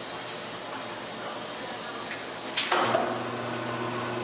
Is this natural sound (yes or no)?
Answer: yes